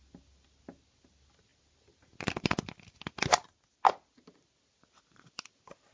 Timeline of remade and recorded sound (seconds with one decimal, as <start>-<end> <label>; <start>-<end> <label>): 0.0-5.9 recorded